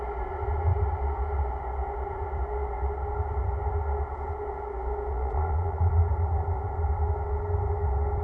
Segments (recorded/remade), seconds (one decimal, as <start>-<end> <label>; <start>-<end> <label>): 0.0-5.1 recorded; 5.1-5.8 remade; 5.8-8.2 recorded